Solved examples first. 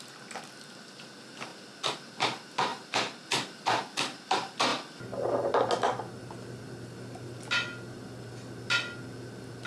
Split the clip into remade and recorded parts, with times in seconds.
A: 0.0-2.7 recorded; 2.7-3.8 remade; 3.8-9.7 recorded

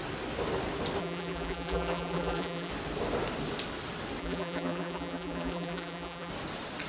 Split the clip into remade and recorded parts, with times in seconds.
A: 0.0-1.0 recorded; 1.0-2.7 remade; 2.7-4.2 recorded; 4.2-6.3 remade; 6.3-6.9 recorded

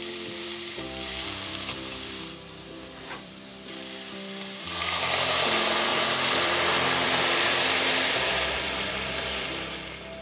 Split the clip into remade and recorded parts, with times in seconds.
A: 0.0-3.5 remade; 3.5-4.8 recorded; 4.8-10.2 remade

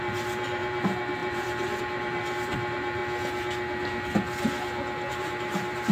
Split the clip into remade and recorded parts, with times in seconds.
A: 0.0-3.0 remade; 3.0-5.1 recorded; 5.1-5.9 remade

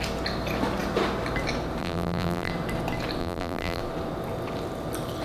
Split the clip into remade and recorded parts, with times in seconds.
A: 0.0-1.8 recorded; 1.8-2.5 remade; 2.5-3.2 recorded; 3.2-3.8 remade; 3.8-5.2 recorded

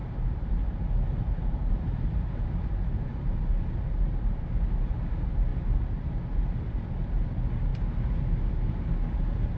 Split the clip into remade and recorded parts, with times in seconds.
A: 0.0-3.4 remade; 3.4-9.6 recorded

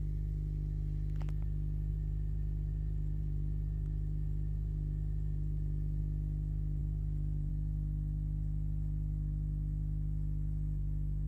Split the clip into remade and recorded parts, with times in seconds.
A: 0.0-1.9 recorded; 1.9-6.0 remade; 6.0-6.8 recorded; 6.8-7.5 remade; 7.5-11.3 recorded